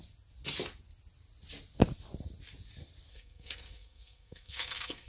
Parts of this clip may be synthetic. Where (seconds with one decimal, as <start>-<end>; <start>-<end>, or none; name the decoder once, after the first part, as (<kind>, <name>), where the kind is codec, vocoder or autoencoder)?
3.1-5.1 (codec, SNAC)